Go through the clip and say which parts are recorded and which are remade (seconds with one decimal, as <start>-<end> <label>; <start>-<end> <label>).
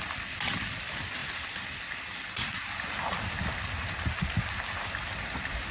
0.0-5.7 recorded